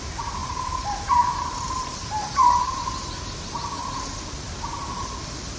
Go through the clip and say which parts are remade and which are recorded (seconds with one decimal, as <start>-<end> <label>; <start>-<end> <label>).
0.0-0.4 recorded; 0.4-3.8 remade; 3.8-5.6 recorded